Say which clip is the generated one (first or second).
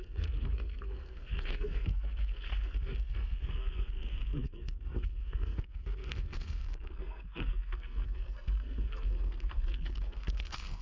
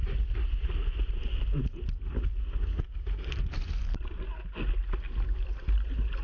first